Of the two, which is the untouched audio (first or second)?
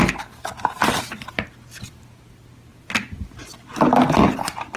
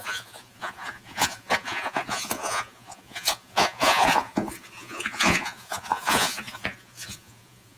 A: first